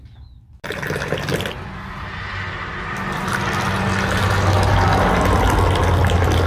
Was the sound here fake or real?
real